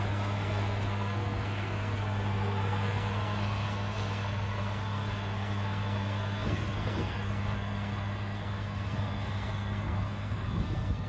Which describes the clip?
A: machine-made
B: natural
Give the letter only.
A